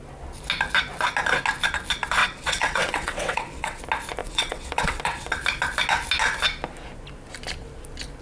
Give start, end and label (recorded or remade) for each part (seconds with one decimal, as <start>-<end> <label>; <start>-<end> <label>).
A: 0.0-2.2 recorded; 2.2-3.8 remade; 3.8-4.2 recorded; 4.2-5.3 remade; 5.3-8.2 recorded

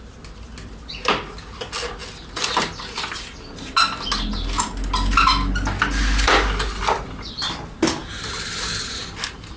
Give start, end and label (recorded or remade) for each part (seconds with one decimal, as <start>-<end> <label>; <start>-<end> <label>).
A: 0.0-9.6 recorded

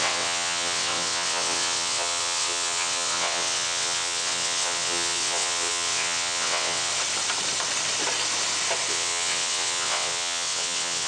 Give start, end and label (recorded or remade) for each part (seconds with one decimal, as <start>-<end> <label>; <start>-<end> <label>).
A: 0.0-6.9 remade; 6.9-8.9 recorded; 8.9-11.1 remade

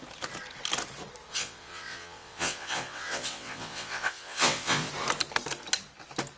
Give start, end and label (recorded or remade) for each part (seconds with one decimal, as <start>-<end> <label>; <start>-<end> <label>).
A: 0.0-1.3 recorded; 1.3-4.9 remade; 4.9-6.4 recorded

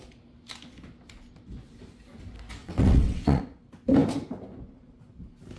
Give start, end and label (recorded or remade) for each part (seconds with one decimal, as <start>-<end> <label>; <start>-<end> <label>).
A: 0.0-2.6 recorded; 2.6-3.4 remade; 3.4-5.6 recorded

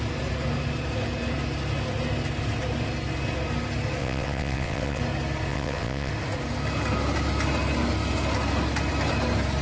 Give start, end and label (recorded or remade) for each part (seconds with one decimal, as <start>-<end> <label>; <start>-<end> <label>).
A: 0.0-4.0 recorded; 4.0-5.0 remade; 5.0-5.5 recorded; 5.5-6.1 remade; 6.1-9.6 recorded

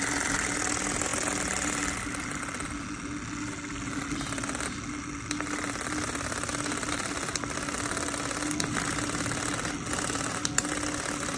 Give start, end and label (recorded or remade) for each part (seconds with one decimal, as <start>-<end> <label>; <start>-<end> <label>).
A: 0.0-11.4 recorded

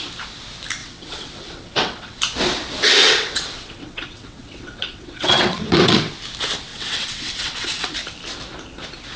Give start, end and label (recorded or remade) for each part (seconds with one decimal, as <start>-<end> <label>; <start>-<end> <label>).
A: 0.0-0.8 recorded; 0.8-2.2 remade; 2.2-3.0 recorded; 3.0-6.1 remade; 6.1-6.7 recorded; 6.7-7.9 remade; 7.9-9.2 recorded